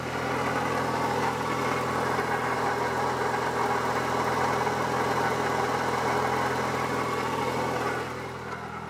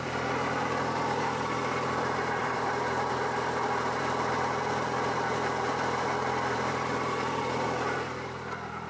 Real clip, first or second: first